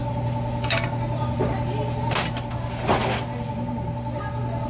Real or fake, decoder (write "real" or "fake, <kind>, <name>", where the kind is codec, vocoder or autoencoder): real